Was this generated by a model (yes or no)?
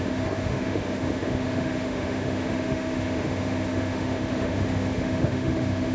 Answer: yes